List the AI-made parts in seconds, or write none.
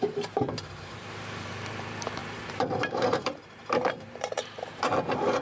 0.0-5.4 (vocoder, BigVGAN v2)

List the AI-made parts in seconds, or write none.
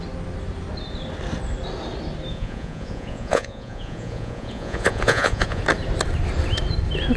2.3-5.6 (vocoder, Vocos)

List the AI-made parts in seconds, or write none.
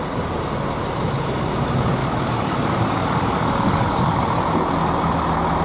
2.0-4.2 (codec, DAC)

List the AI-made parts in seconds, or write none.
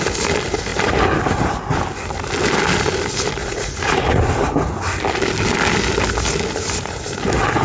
3.4-4.2 (vocoder, Vocos)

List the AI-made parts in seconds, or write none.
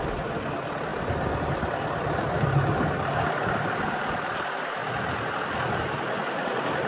0.0-6.9 (vocoder, BigVGAN v2)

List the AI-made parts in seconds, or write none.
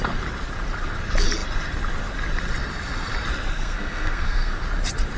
3.5-4.6 (codec, SNAC)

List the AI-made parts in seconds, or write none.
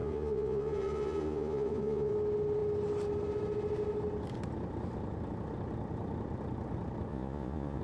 0.0-2.1 (vocoder, Vocos); 7.1-7.8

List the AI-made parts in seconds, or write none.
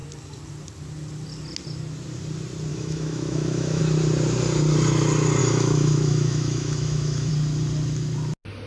2.7-3.8 (autoencoder, DAC-VAE); 5.4-7.3